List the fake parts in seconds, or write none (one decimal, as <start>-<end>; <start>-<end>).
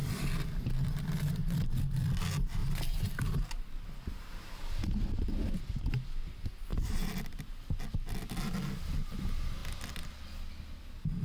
0.0-1.3; 2.6-3.4; 6.7-7.9